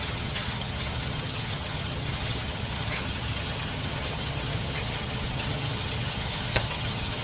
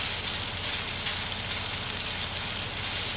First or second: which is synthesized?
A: first